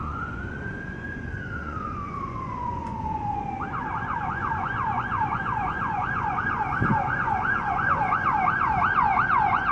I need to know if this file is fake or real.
fake